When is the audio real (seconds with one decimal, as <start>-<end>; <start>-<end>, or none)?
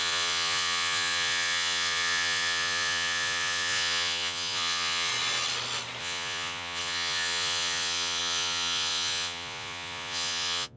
5.1-6.0